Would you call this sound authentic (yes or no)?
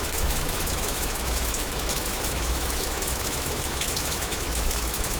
no